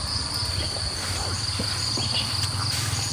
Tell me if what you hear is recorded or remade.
recorded